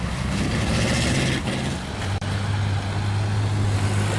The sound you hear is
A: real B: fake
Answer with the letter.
A